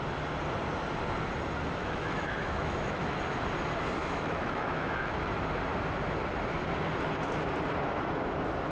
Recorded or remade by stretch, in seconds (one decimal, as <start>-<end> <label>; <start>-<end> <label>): 0.0-1.8 recorded; 1.8-3.2 remade; 3.2-4.0 recorded; 4.0-5.3 remade; 5.3-8.7 recorded